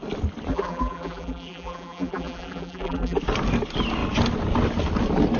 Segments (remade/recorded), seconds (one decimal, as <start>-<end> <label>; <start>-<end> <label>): 0.0-0.5 recorded; 0.5-3.2 remade; 3.2-5.4 recorded